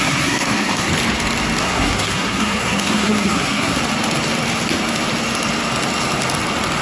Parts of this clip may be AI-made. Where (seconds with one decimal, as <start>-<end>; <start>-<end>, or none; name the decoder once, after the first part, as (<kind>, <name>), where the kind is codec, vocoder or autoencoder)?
0.0-0.9 (codec, SNAC); 1.6-3.8